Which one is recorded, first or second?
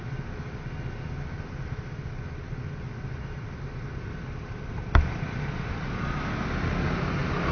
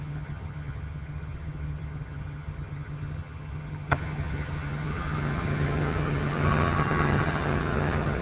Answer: first